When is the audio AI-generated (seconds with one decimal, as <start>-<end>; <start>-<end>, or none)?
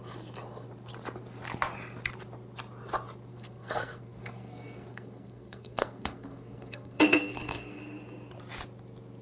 3.3-7.8